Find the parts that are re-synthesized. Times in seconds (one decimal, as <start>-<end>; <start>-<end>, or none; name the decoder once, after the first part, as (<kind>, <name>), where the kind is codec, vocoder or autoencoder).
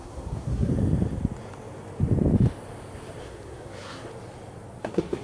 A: 0.0-0.7 (codec, SNAC); 3.2-4.1; 4.8-5.2